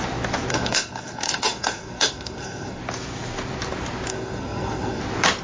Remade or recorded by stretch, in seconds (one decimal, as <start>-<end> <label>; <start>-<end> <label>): 0.0-0.5 recorded; 0.5-2.8 remade; 2.8-4.1 recorded; 4.1-5.0 remade; 5.0-5.4 recorded